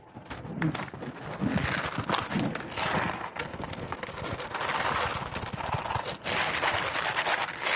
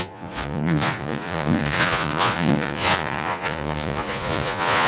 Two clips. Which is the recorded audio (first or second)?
first